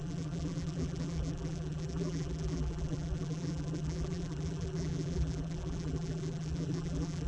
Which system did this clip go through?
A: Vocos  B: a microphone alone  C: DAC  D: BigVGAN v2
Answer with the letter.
D